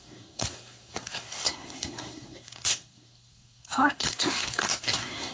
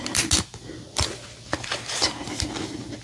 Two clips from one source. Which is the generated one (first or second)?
first